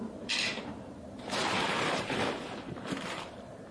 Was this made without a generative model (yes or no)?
no